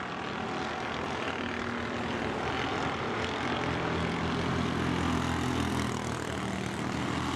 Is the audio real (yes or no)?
yes